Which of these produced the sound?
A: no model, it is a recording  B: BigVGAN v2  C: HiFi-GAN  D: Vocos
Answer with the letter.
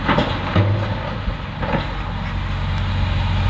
A